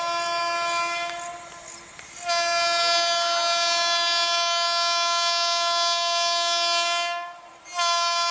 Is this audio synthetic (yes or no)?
no